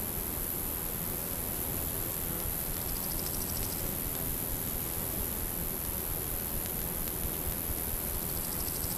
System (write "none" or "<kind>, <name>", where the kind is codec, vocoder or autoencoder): none